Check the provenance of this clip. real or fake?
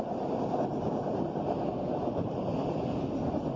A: real